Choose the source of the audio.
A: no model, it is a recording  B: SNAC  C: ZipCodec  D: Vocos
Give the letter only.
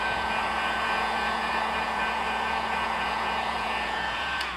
D